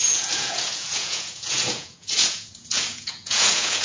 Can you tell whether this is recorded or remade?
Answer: remade